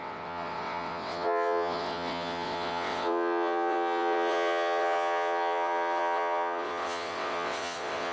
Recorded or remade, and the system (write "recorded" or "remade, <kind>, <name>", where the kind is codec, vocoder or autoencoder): remade, vocoder, WaveNeXt